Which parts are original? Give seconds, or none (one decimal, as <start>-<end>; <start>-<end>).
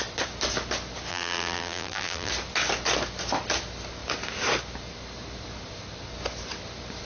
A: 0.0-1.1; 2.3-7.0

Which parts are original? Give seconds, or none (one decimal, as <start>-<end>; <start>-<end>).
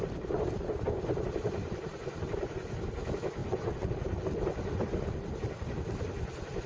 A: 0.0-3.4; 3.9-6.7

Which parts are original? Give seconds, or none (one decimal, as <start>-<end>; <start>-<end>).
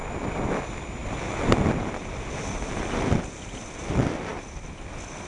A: 0.6-1.0; 2.2-4.3